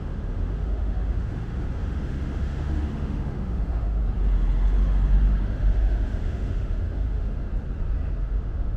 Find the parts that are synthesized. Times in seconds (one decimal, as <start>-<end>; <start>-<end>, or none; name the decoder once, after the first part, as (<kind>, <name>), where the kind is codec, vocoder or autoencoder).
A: 0.0-4.0 (autoencoder, DAC-VAE); 5.4-7.5; 8.2-8.8